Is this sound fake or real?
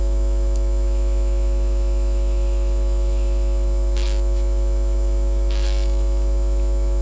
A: fake